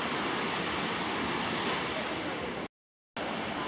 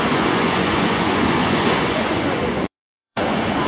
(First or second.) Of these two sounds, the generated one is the second